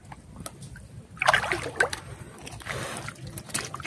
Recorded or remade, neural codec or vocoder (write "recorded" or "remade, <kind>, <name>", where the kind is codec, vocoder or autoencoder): recorded